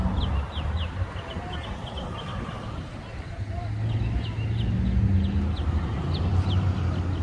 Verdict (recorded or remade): recorded